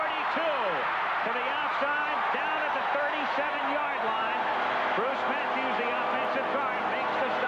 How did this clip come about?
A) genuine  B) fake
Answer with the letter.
A